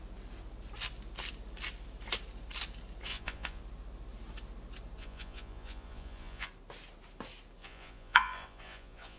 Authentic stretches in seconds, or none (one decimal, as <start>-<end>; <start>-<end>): 0.0-3.1; 3.6-5.0; 6.5-7.6